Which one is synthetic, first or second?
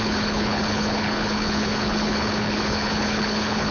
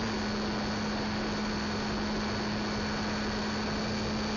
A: first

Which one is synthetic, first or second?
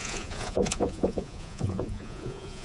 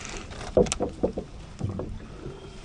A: first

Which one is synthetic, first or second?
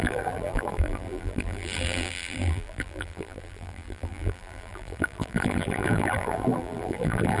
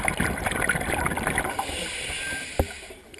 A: first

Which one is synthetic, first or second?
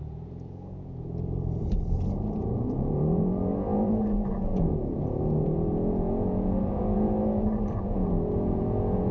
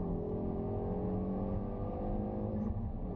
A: first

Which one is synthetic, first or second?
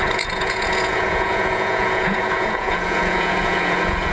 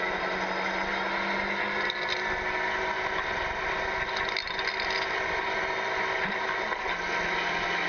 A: first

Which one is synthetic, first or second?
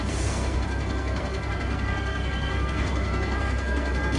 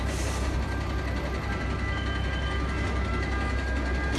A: first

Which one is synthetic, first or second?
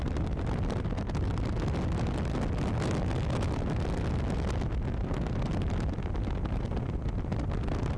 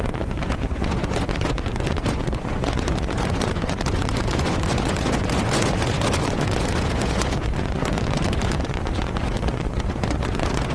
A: second